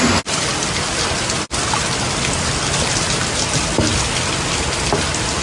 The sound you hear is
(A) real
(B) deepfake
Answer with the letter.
A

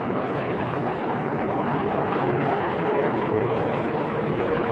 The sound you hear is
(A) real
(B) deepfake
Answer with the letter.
B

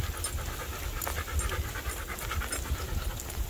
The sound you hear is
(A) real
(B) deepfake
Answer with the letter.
A